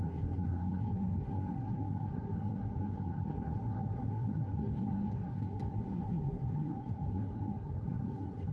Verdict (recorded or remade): remade